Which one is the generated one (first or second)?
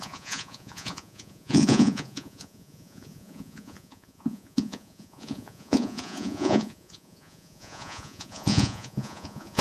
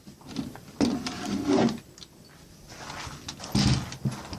first